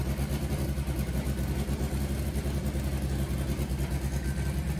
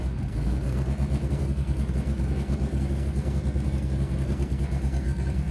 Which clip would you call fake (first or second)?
second